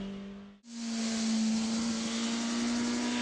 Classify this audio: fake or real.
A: real